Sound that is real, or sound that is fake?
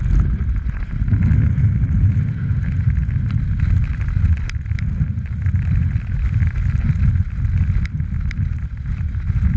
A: real